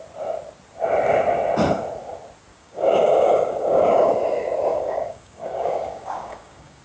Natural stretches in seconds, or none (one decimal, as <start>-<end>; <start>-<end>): 0.0-2.5; 4.1-4.7